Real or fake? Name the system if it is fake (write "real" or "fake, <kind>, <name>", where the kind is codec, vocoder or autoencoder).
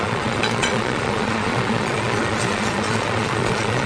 fake, vocoder, Vocos